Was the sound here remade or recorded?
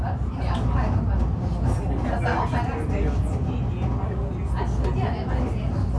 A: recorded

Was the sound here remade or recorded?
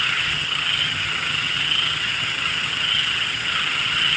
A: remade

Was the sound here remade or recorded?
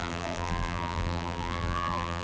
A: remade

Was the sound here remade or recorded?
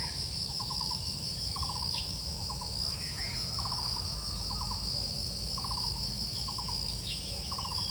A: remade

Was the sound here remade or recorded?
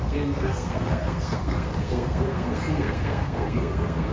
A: remade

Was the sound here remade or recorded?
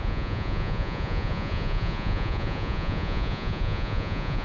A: remade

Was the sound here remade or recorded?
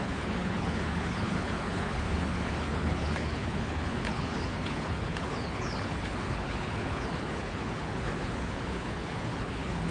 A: remade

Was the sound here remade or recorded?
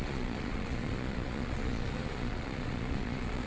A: remade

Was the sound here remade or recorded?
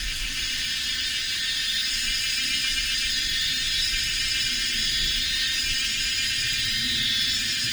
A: recorded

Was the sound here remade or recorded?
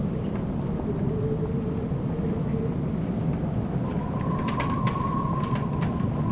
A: recorded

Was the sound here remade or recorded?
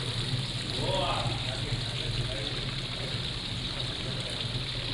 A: recorded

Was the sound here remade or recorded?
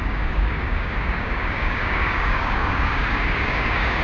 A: remade